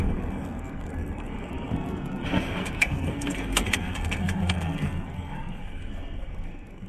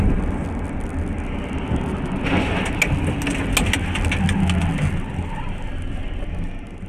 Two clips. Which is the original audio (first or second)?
second